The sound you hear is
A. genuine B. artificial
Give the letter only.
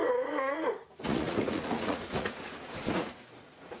B